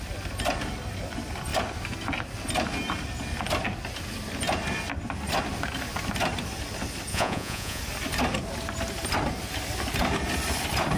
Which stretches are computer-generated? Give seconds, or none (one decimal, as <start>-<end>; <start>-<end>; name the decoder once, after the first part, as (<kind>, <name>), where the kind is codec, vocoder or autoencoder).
7.1-7.8 (vocoder, Vocos)